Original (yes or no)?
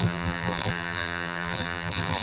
no